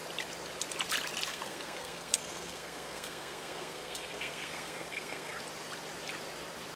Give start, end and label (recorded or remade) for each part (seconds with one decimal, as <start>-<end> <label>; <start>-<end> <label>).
0.0-1.3 recorded; 1.3-5.4 remade; 5.4-6.8 recorded